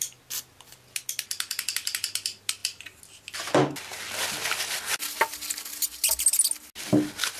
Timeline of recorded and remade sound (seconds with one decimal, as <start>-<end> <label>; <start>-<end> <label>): 0.0-7.4 recorded